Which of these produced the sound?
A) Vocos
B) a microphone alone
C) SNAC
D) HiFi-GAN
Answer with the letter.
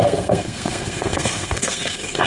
C